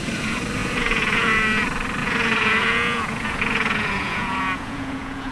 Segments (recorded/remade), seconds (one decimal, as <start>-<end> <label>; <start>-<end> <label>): 0.0-0.6 recorded; 0.6-1.6 remade; 1.6-2.0 recorded; 2.0-5.3 remade